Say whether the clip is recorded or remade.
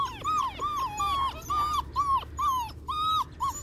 recorded